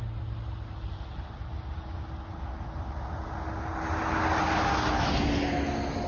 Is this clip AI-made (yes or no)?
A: no